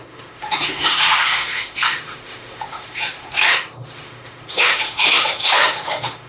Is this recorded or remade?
remade